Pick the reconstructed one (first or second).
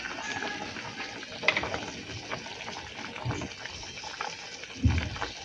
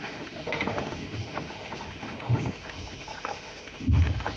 second